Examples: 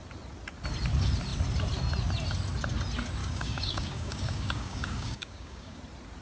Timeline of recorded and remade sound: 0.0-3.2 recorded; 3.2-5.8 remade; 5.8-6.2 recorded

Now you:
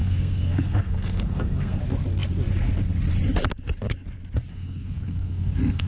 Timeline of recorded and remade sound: 0.0-1.8 remade; 1.8-4.5 recorded; 4.5-5.9 remade

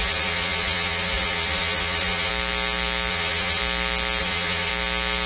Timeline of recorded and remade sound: 0.0-2.3 remade; 2.3-3.1 recorded; 3.1-3.6 remade; 3.6-4.2 recorded; 4.2-4.7 remade; 4.7-5.3 recorded

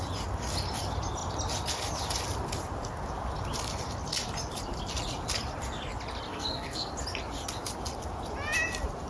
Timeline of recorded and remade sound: 0.0-6.3 recorded; 6.3-6.9 remade; 6.9-9.1 recorded

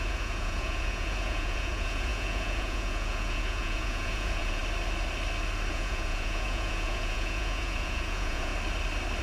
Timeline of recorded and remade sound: 0.0-4.6 remade; 4.6-5.7 recorded; 5.7-8.5 remade; 8.5-9.2 recorded

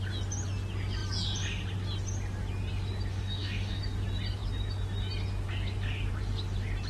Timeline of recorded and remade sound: 0.0-3.1 recorded; 3.1-3.8 remade; 3.8-6.9 recorded